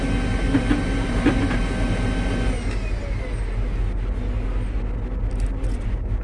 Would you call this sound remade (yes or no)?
no